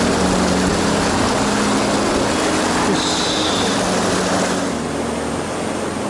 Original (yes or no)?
yes